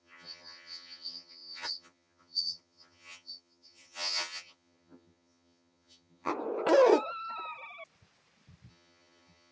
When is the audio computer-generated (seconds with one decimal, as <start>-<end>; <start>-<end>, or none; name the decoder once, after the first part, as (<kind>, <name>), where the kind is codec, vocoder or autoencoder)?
0.0-6.3 (vocoder, HiFi-GAN); 8.7-9.5